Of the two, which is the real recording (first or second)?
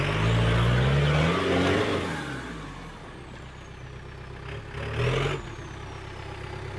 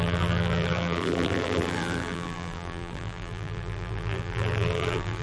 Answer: first